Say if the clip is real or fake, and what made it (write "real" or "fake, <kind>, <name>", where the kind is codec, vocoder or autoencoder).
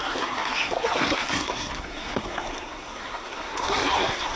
fake, codec, SNAC